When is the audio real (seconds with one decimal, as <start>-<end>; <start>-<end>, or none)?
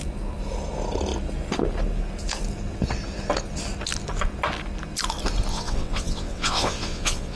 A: 0.0-5.5